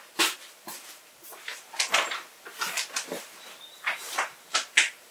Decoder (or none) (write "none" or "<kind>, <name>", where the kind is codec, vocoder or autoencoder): vocoder, BigVGAN v2